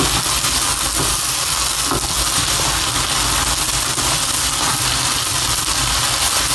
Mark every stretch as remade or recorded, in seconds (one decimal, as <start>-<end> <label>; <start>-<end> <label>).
0.0-6.5 recorded